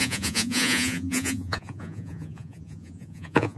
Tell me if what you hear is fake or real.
fake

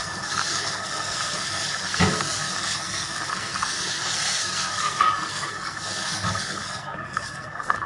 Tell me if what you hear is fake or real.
fake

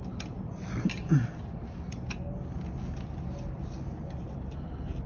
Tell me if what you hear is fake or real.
real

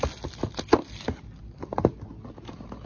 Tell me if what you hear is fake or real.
real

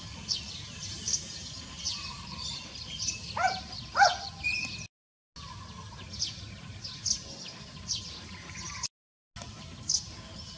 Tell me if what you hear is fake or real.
real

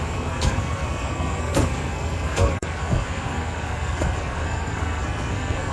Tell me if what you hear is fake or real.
fake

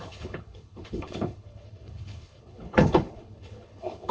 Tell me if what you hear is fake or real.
fake